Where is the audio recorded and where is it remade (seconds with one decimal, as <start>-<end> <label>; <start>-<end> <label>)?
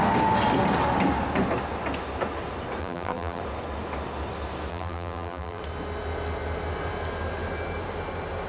0.0-2.8 recorded; 2.8-3.4 remade; 3.4-4.7 recorded; 4.7-5.6 remade; 5.6-8.5 recorded